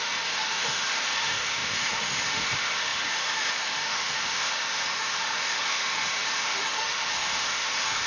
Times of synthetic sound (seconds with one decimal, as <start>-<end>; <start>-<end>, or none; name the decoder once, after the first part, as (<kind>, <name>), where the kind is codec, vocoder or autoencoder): 0.0-8.1 (autoencoder, DAC-VAE)